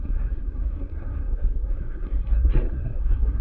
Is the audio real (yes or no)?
no